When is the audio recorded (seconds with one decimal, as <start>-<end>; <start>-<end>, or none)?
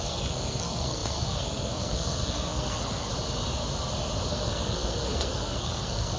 3.1-4.3